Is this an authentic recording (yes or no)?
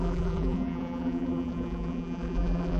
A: no